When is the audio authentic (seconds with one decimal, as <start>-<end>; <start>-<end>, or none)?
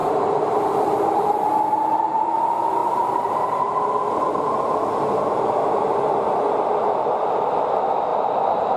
1.6-2.8; 3.8-8.1